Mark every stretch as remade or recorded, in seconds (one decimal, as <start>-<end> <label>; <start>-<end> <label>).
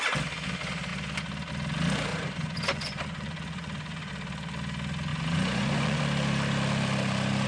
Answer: 0.0-2.1 recorded; 2.1-4.1 remade; 4.1-5.1 recorded; 5.1-6.0 remade; 6.0-7.5 recorded